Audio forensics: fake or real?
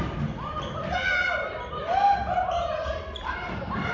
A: real